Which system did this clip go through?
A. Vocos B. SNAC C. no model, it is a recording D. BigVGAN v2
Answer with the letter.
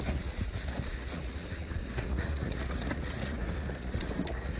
A